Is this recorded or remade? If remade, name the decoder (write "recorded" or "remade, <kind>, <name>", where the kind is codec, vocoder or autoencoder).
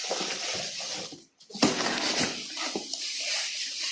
recorded